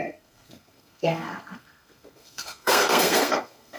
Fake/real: fake